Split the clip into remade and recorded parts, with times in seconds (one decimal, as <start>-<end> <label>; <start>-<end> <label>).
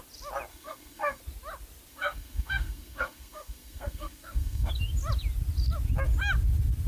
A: 0.0-0.5 recorded; 0.5-1.2 remade; 1.2-1.9 recorded; 1.9-4.7 remade; 4.7-6.9 recorded